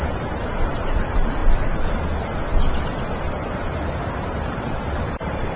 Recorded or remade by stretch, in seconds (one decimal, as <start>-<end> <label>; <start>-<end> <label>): 0.0-1.4 remade; 1.4-4.1 recorded; 4.1-5.6 remade